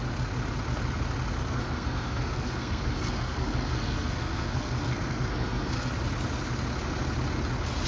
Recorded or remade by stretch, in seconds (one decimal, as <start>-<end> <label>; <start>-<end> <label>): 0.0-1.4 recorded; 1.4-5.9 remade; 5.9-7.9 recorded